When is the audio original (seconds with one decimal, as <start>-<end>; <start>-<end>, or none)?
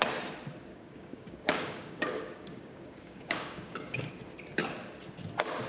0.0-0.7; 4.1-5.7